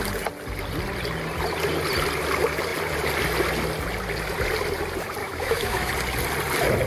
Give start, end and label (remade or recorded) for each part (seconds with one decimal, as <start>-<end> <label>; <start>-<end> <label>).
0.0-5.2 recorded; 5.2-5.9 remade; 5.9-6.9 recorded